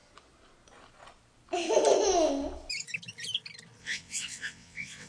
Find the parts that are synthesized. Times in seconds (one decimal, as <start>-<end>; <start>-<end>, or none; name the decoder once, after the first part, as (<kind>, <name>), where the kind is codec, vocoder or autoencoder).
3.8-5.1 (vocoder, WaveNeXt)